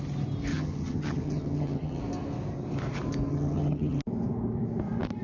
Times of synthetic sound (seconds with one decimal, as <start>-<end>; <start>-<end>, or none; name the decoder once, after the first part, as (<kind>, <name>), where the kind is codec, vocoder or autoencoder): 0.5-2.0 (vocoder, HiFi-GAN); 3.3-4.0